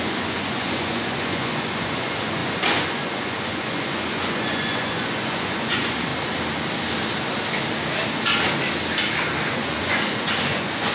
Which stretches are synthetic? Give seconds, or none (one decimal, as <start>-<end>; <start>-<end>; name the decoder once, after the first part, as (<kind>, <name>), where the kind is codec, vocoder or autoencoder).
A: 0.0-6.1 (vocoder, Vocos); 9.5-10.9